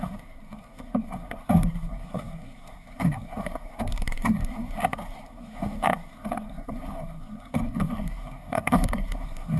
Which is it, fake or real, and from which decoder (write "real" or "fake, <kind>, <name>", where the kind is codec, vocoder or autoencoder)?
fake, codec, SNAC